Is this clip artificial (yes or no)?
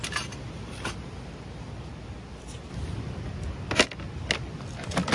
no